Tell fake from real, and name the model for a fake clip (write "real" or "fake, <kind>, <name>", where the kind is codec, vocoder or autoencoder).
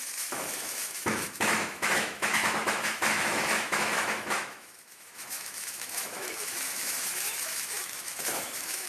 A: fake, autoencoder, DAC-VAE